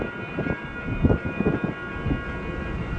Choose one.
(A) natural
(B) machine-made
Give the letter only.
A